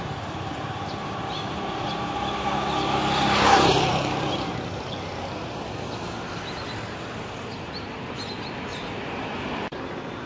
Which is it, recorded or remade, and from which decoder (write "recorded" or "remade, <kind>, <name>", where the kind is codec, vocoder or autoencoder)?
remade, vocoder, BigVGAN v2